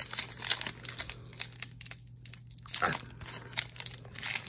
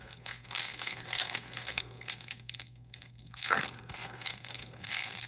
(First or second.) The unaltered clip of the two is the first